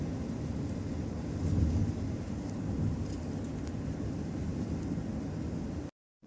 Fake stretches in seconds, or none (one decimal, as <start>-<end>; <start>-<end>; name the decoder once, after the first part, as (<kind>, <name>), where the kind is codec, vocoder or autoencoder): none